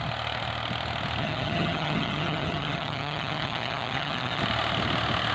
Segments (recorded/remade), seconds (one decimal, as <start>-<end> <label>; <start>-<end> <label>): 0.0-1.2 recorded; 1.2-4.4 remade; 4.4-5.3 recorded